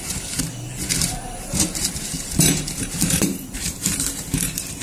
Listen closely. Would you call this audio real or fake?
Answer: fake